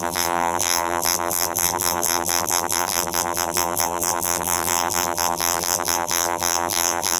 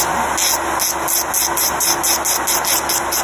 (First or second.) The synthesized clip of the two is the first